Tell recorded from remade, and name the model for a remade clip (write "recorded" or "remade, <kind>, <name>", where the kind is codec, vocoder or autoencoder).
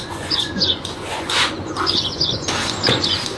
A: remade, vocoder, Vocos